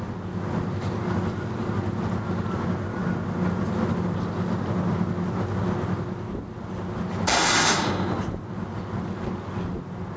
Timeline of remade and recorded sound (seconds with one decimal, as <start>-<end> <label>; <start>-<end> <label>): 0.0-10.2 recorded